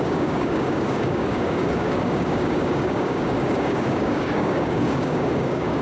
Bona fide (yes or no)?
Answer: no